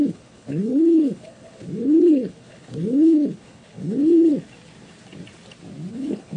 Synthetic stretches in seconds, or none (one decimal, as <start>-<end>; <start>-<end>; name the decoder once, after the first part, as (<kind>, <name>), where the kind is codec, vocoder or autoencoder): 0.0-4.3 (codec, HILCodec); 5.9-6.4